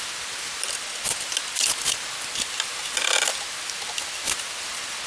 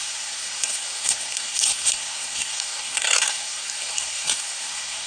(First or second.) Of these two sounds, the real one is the first